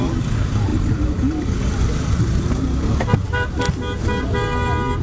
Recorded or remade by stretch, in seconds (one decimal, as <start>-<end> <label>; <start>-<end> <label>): 0.0-0.7 recorded; 0.7-2.6 remade; 2.6-3.2 recorded; 3.2-3.7 remade; 3.7-5.0 recorded